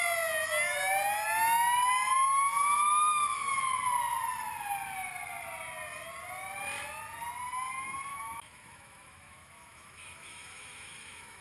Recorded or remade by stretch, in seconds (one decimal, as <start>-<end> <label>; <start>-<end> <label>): 0.0-8.1 recorded; 8.1-11.4 remade